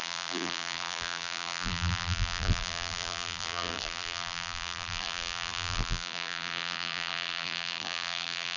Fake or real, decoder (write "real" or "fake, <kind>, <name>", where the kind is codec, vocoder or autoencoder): fake, vocoder, BigVGAN v2